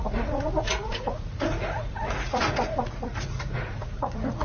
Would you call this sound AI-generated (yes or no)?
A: yes